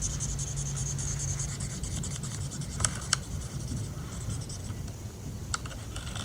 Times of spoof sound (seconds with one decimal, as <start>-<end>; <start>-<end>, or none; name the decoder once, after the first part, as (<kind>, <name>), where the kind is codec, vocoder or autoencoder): none